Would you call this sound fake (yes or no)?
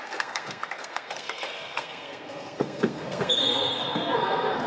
yes